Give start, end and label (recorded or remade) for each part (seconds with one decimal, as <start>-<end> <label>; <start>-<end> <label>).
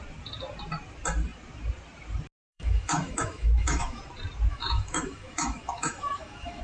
0.0-2.5 recorded; 2.5-4.0 remade; 4.0-4.5 recorded; 4.5-6.6 remade